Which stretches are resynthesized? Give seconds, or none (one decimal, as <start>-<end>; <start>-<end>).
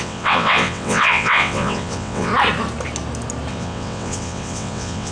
0.0-2.3; 3.5-5.1